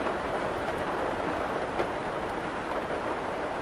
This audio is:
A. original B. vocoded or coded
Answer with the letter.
B